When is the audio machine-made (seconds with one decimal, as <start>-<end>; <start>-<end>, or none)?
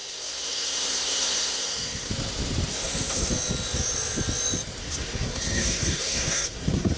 0.0-2.1; 2.7-3.3; 4.8-7.0